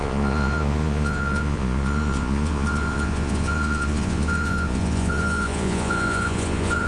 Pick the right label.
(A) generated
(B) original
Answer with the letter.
A